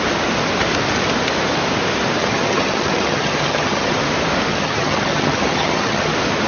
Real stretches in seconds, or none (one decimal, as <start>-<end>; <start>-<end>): 0.0-2.2; 4.1-4.5; 6.1-6.5